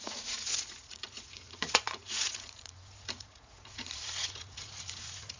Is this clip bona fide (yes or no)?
no